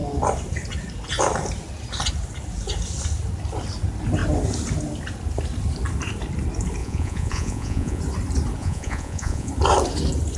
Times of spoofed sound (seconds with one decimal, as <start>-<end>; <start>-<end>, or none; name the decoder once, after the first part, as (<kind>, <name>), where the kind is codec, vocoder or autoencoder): 6.8-8.0 (vocoder, Vocos); 8.6-9.5